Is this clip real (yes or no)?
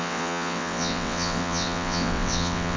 no